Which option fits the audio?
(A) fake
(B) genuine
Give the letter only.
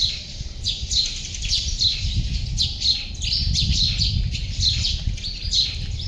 B